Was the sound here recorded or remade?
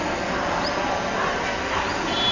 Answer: recorded